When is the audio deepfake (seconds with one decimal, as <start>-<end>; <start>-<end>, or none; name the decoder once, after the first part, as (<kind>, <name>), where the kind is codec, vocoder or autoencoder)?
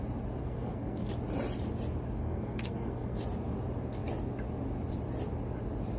0.4-1.1 (codec, SNAC); 2.2-3.2